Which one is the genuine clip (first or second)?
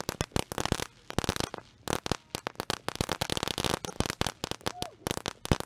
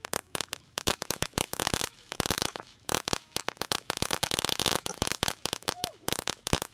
first